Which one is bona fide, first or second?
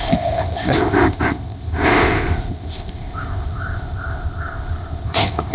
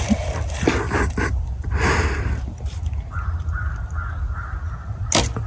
second